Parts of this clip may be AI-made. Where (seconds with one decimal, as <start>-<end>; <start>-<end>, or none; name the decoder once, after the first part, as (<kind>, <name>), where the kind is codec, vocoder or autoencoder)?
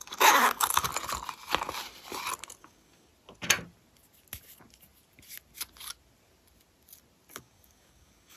0.0-0.9 (codec, DAC); 2.6-3.1; 7.4-8.4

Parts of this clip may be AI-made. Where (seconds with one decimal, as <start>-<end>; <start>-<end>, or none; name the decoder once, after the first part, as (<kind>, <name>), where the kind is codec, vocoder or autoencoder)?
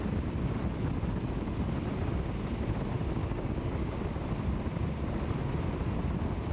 3.2-4.0 (codec, DAC)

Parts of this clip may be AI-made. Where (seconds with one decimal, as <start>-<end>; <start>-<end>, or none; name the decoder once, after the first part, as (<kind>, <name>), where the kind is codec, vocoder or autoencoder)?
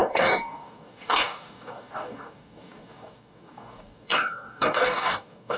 0.0-5.6 (codec, DAC)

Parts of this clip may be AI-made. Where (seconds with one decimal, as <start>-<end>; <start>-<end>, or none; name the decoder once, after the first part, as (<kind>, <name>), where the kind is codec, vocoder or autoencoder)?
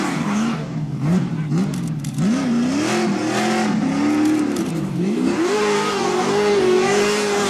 0.0-1.3 (codec, DAC); 4.7-7.5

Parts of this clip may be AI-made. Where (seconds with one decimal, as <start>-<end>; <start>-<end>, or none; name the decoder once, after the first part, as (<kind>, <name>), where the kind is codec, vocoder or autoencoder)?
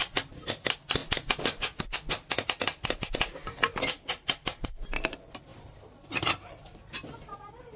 none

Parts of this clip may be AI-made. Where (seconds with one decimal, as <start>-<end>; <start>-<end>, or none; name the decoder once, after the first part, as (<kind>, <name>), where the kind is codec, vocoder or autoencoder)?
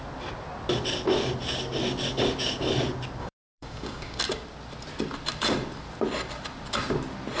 3.2-4.2 (codec, DAC)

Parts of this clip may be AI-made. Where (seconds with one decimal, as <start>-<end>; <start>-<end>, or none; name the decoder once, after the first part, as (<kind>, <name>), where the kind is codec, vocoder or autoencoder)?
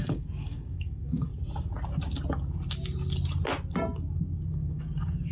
0.0-1.3 (codec, DAC); 4.5-5.3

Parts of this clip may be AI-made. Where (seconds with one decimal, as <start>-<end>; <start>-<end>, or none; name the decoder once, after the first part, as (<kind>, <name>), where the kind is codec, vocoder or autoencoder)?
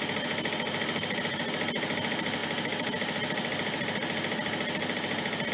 none